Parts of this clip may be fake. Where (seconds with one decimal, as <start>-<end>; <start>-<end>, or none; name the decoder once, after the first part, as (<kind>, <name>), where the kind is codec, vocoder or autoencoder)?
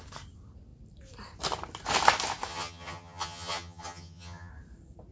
2.5-4.5 (vocoder, HiFi-GAN)